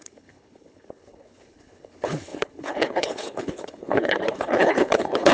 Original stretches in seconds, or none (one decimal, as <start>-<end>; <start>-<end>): none